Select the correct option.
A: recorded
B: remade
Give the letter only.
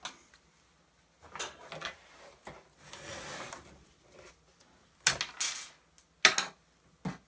A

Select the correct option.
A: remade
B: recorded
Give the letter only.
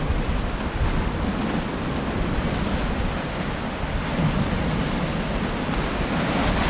B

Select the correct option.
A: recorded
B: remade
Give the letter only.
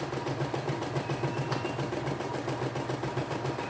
A